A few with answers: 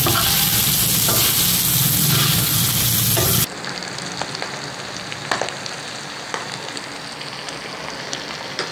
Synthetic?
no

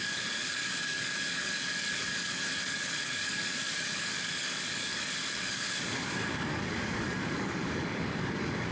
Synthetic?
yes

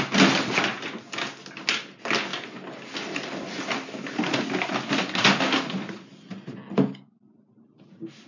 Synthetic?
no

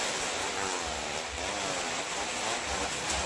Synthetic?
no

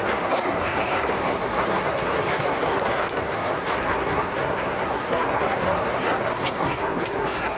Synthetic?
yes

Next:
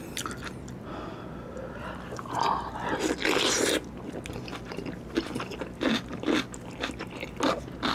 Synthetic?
no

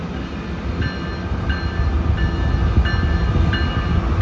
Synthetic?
no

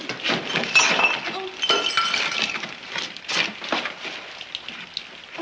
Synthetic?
no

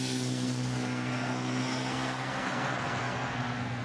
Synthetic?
yes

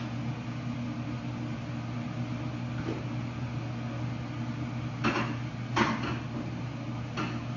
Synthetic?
no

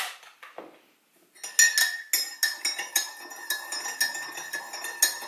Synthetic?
no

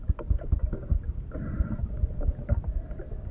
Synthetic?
no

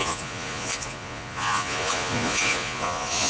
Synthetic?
yes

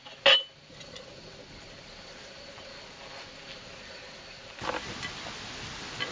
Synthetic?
no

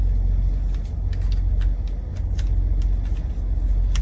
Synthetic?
no